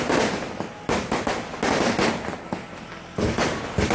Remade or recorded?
recorded